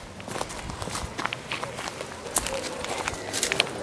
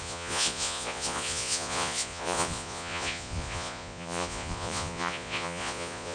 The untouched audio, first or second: first